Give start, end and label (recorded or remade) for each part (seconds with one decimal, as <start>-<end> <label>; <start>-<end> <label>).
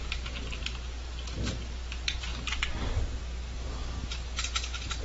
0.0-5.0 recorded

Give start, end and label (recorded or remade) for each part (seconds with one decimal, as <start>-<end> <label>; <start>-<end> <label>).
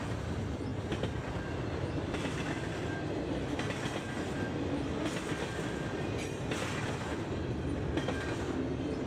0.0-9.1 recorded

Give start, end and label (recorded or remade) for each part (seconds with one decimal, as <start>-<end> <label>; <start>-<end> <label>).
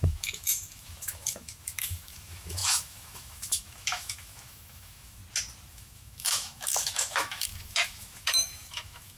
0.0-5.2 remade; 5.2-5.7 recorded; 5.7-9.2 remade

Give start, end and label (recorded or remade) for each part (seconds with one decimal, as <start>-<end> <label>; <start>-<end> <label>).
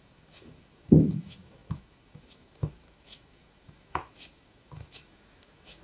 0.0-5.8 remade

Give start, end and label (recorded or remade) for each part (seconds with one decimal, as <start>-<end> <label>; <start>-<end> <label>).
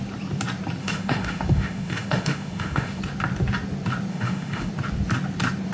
0.0-0.8 recorded; 0.8-3.0 remade; 3.0-4.1 recorded; 4.1-4.7 remade; 4.7-5.7 recorded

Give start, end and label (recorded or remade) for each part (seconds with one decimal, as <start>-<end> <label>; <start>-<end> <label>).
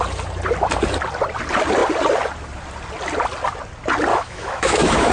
0.0-4.1 recorded; 4.1-5.1 remade